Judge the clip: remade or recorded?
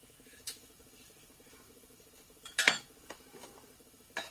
remade